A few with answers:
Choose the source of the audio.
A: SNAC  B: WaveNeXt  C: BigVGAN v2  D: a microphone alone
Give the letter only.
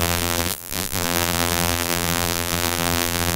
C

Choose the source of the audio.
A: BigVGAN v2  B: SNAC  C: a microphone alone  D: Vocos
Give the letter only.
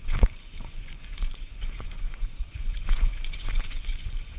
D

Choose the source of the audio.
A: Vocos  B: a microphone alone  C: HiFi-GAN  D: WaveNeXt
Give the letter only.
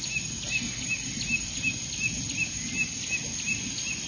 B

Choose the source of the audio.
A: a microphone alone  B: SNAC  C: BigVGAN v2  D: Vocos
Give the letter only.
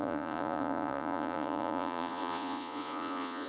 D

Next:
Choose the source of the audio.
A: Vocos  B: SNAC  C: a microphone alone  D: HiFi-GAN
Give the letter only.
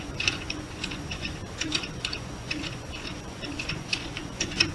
A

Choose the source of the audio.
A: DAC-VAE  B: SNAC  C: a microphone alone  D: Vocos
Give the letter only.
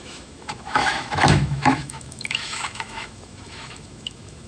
A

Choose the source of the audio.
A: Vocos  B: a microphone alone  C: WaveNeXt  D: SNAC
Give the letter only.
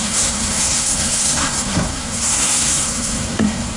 D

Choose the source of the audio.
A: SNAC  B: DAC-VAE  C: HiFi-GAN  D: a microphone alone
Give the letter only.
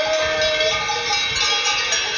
D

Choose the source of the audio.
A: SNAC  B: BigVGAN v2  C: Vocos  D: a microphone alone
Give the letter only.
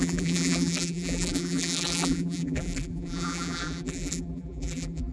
B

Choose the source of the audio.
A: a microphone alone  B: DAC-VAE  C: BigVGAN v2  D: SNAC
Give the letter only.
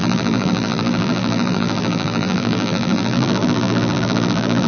C